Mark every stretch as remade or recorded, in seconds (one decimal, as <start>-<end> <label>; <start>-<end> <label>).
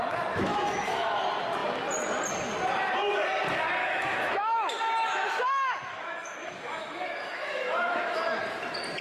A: 0.0-0.5 recorded; 0.5-1.1 remade; 1.1-3.8 recorded; 3.8-8.4 remade; 8.4-9.0 recorded